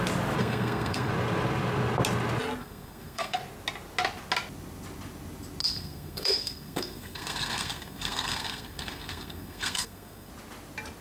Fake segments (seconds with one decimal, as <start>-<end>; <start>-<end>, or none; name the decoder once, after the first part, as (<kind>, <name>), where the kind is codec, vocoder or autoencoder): 0.4-1.1 (codec, SNAC); 2.6-3.4; 5.6-10.3